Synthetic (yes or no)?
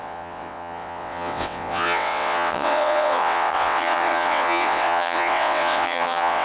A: yes